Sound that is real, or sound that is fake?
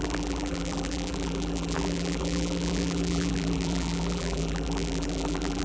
fake